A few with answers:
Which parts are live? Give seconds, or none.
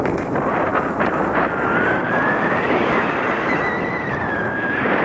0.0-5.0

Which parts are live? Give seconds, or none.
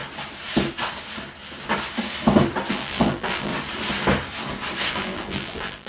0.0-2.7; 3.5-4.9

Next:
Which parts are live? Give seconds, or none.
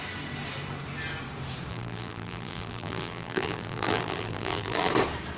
0.0-1.7; 4.9-5.4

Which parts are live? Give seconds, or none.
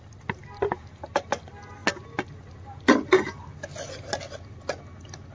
0.0-5.3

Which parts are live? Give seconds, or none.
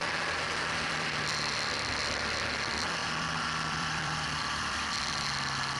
1.9-3.0; 5.0-5.8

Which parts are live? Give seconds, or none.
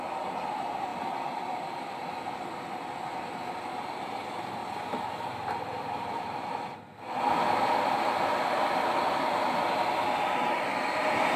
0.0-0.9; 1.4-4.6; 9.0-11.4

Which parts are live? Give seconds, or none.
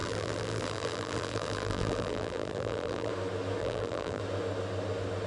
3.1-3.6; 4.2-5.3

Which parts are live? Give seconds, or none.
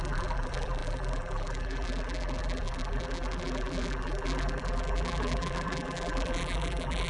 none